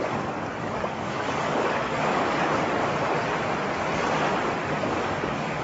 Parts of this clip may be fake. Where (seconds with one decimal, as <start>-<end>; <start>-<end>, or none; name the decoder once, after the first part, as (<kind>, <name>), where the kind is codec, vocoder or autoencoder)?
0.0-2.8 (codec, DAC); 4.8-5.6